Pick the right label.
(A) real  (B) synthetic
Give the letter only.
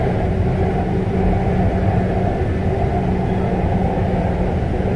A